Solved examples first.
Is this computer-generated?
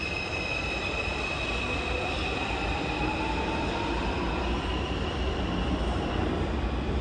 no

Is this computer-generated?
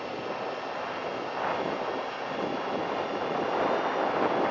no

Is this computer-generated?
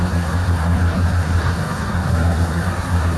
yes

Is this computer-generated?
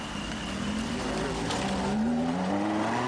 no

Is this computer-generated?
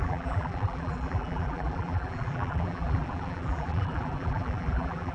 yes